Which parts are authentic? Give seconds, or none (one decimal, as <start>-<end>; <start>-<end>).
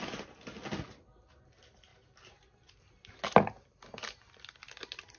0.0-5.2